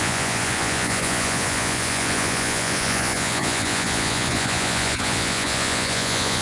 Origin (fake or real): fake